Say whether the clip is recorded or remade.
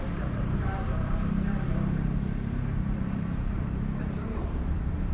remade